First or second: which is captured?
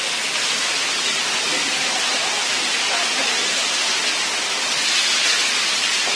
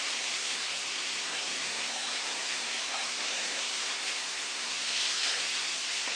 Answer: first